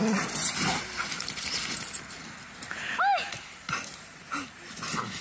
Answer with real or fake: real